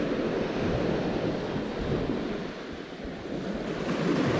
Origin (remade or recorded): recorded